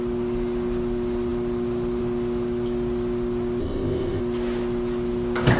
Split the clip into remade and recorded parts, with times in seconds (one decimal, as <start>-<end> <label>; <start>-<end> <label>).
0.0-3.6 recorded; 3.6-4.2 remade; 4.2-5.6 recorded